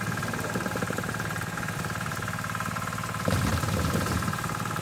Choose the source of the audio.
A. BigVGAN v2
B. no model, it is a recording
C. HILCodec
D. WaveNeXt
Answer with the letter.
A